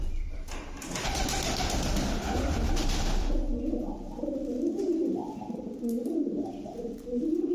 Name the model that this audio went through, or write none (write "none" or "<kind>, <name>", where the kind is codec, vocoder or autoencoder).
vocoder, BigVGAN v2